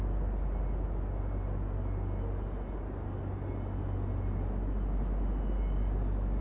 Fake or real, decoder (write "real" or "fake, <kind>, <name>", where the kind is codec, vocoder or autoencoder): real